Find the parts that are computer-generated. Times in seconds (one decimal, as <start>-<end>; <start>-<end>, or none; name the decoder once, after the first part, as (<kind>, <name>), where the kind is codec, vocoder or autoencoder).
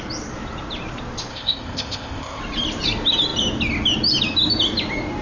1.3-2.4 (codec, ZipCodec)